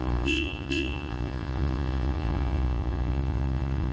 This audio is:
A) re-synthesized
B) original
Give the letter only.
A